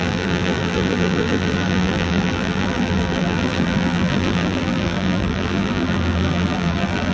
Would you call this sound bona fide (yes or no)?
no